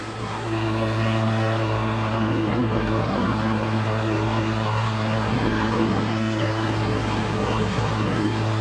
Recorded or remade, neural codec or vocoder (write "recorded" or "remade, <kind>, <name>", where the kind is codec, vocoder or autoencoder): remade, codec, SNAC